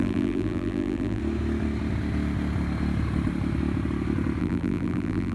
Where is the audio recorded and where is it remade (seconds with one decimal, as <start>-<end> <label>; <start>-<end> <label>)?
0.0-1.2 remade; 1.2-4.4 recorded; 4.4-5.3 remade